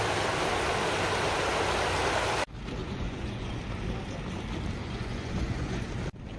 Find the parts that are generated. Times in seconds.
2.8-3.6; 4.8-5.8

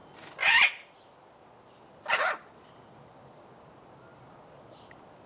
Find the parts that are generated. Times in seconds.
none

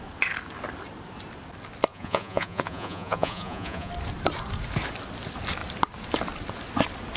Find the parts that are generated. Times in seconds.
1.9-3.9

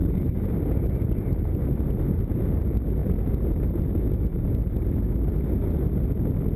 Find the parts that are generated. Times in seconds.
0.0-1.6; 3.0-3.8; 4.3-5.3

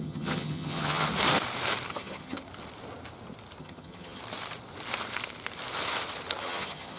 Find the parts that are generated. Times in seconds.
0.0-1.1; 1.9-2.4; 3.6-4.2; 6.4-7.0

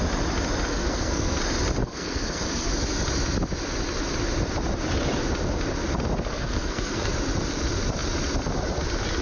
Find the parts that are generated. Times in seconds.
0.7-1.4; 1.8-2.7; 6.3-7.1

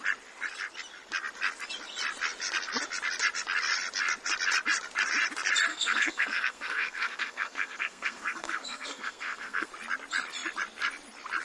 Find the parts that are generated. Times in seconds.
5.7-9.7